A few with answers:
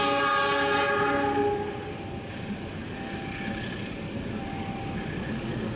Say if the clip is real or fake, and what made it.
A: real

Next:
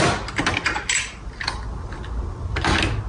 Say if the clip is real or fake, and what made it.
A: real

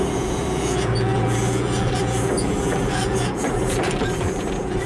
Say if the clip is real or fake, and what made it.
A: fake, vocoder, BigVGAN v2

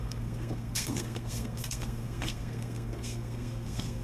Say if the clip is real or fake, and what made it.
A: fake, codec, SNAC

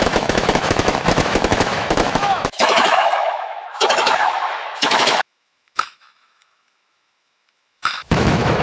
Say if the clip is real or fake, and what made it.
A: fake, autoencoder, DAC-VAE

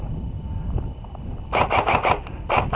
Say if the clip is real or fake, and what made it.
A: real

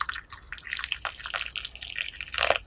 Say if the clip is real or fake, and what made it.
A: real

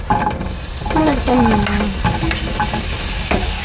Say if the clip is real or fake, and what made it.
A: real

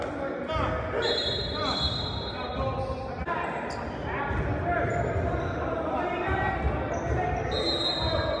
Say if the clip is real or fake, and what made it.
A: real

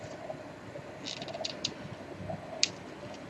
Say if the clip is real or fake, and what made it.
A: real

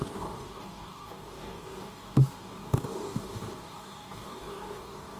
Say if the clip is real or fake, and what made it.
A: fake, codec, DAC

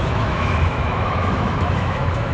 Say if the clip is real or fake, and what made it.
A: fake, autoencoder, DAC-VAE